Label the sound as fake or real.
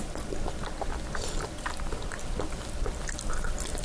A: real